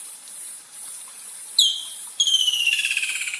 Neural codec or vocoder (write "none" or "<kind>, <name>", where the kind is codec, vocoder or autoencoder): vocoder, BigVGAN v2